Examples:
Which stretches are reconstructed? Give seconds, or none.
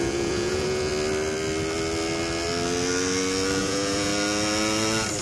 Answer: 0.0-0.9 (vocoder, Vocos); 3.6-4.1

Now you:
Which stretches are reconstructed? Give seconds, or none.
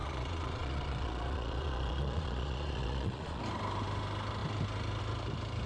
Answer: 0.0-3.4 (vocoder, Vocos)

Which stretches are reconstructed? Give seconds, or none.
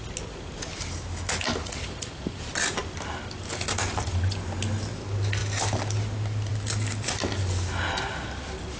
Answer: 1.6-2.4 (vocoder, Vocos)